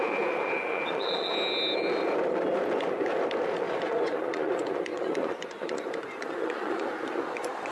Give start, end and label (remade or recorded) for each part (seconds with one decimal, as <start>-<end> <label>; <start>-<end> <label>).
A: 0.0-1.3 remade; 1.3-3.7 recorded; 3.7-7.7 remade